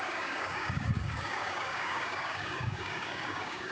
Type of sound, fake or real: fake